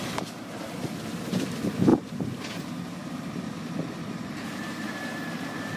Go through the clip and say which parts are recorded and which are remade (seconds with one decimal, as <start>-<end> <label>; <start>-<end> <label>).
0.0-1.9 recorded; 1.9-2.4 remade; 2.4-3.0 recorded; 3.0-5.8 remade